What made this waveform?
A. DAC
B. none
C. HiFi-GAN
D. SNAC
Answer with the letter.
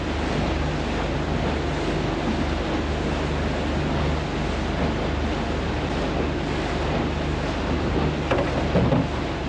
B